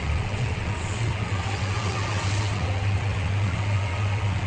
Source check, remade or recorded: remade